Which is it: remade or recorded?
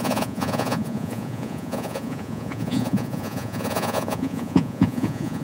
remade